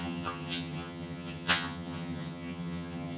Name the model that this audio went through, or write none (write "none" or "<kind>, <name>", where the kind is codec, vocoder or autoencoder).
vocoder, HiFi-GAN